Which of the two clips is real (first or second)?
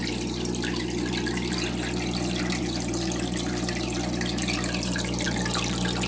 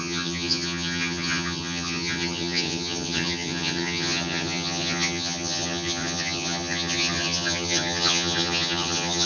first